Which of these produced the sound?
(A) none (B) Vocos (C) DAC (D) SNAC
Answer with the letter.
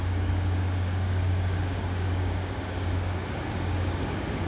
C